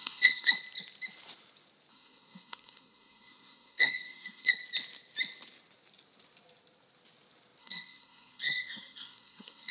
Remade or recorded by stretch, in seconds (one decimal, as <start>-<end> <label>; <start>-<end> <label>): 0.0-0.5 remade; 0.5-1.9 recorded; 1.9-4.5 remade; 4.5-7.6 recorded; 7.6-9.7 remade